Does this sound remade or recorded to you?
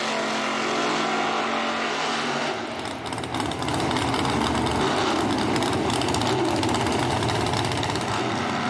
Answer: recorded